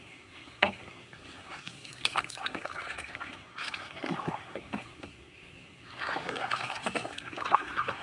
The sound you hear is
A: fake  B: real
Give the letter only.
A